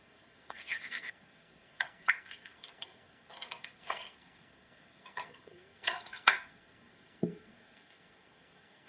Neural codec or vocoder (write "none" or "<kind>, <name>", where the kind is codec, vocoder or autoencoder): codec, SNAC